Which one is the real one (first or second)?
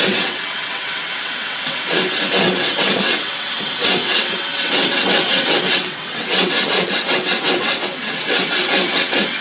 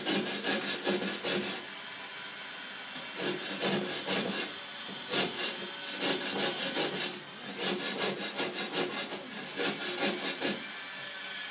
second